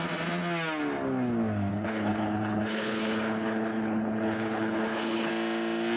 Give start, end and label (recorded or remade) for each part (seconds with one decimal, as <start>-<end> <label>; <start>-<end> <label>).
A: 0.0-1.7 recorded; 1.7-5.3 remade; 5.3-6.0 recorded

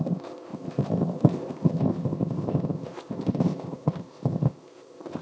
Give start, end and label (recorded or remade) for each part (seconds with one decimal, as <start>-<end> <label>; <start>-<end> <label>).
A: 0.0-5.2 remade

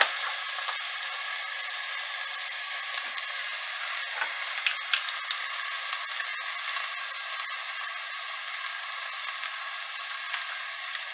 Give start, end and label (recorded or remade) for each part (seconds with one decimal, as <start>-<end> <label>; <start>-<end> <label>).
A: 0.0-6.3 remade; 6.3-11.1 recorded

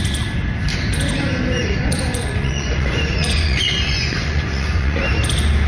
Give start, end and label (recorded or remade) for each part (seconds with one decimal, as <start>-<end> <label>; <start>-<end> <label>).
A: 0.0-1.6 recorded; 1.6-5.0 remade; 5.0-5.7 recorded